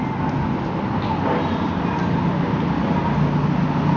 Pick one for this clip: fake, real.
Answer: real